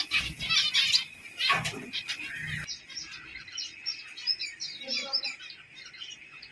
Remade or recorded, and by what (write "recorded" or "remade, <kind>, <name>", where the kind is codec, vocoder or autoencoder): recorded